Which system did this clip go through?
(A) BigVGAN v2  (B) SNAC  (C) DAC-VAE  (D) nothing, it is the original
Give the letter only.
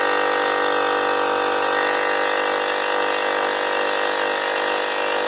D